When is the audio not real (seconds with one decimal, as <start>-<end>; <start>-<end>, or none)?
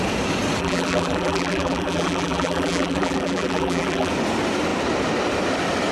0.6-4.1